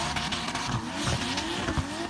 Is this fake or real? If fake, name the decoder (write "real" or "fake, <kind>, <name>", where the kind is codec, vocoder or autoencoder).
real